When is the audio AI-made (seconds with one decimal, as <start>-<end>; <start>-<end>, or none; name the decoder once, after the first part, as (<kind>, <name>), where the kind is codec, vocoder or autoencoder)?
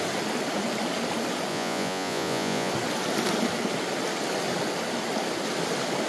1.5-2.7 (vocoder, Vocos)